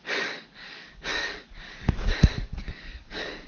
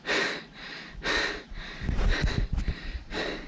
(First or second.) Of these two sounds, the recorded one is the second